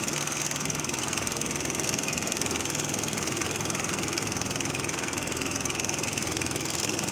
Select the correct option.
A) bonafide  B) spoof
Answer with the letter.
B